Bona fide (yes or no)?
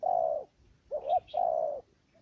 yes